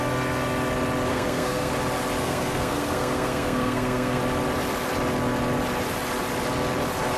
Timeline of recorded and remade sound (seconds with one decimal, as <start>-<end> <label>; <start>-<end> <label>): 0.0-1.1 recorded; 1.1-1.7 remade; 1.7-2.2 recorded; 2.2-4.2 remade; 4.2-7.2 recorded